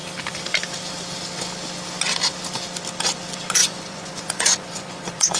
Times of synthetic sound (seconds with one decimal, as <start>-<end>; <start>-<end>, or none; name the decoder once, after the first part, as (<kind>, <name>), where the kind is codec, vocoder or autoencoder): 3.6-5.4 (vocoder, Vocos)